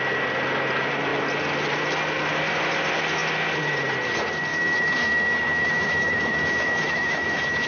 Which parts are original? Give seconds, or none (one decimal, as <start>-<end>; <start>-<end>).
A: 0.0-4.5